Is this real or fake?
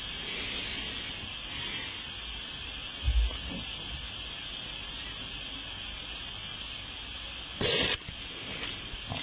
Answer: real